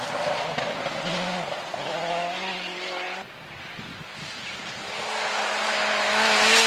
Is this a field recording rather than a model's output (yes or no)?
yes